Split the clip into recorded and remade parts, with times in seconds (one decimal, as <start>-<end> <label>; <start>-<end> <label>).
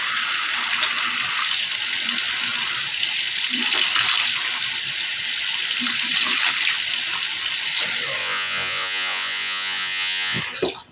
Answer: 0.0-8.2 recorded; 8.2-10.4 remade; 10.4-10.9 recorded